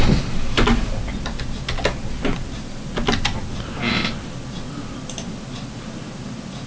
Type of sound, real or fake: real